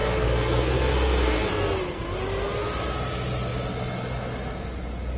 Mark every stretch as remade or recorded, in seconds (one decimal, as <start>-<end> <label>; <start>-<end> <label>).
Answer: 0.0-2.0 remade; 2.0-5.2 recorded